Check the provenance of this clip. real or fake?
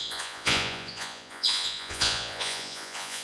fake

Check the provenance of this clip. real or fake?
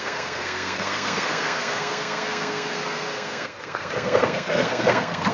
fake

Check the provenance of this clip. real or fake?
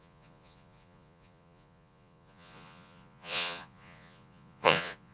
fake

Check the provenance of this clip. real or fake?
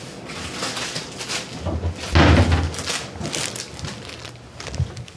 real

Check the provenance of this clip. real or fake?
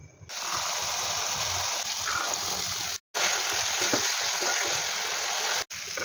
real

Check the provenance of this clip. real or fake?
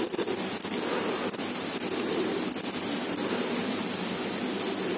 real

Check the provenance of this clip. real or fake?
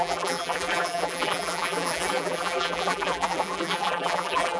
fake